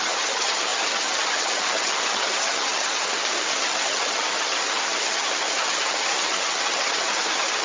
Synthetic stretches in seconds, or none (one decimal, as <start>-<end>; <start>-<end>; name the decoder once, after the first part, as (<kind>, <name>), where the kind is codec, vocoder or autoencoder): 0.0-7.6 (vocoder, HiFi-GAN)